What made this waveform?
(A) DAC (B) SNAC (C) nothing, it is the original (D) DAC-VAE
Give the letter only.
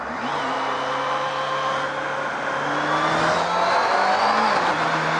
C